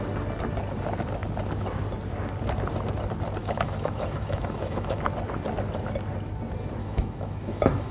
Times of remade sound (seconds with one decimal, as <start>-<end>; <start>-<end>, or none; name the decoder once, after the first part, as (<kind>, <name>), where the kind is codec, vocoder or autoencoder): 3.4-5.0 (autoencoder, DAC-VAE); 6.8-7.9